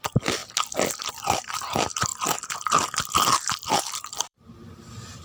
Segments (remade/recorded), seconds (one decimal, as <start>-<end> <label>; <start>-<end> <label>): 0.0-0.4 remade; 0.4-1.1 recorded; 1.1-2.1 remade; 2.1-3.8 recorded; 3.8-5.2 remade